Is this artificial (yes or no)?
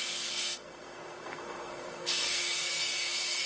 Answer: yes